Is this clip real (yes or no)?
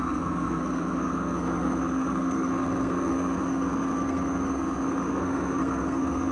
no